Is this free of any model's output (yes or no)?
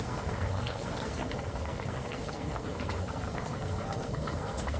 no